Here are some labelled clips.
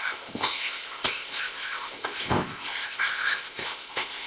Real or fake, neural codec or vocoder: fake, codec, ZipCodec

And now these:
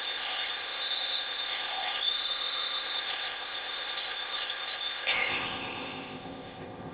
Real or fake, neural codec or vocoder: fake, codec, ZipCodec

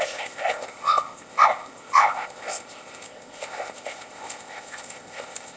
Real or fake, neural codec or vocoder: fake, codec, ZipCodec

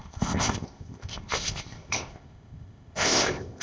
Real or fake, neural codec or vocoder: fake, codec, ZipCodec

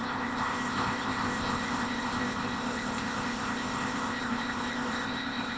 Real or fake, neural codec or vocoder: fake, codec, ZipCodec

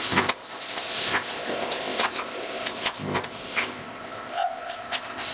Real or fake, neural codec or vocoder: fake, codec, ZipCodec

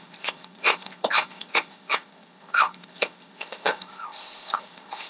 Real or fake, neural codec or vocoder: fake, codec, ZipCodec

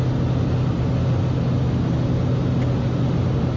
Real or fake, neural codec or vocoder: real